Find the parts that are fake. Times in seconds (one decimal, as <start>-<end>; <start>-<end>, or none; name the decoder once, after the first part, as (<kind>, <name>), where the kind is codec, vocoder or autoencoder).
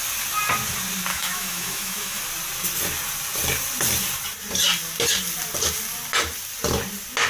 1.1-2.2 (autoencoder, DAC-VAE)